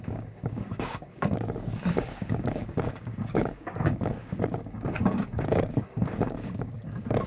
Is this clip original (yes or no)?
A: no